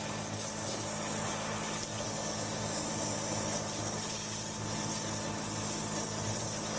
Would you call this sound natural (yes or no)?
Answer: yes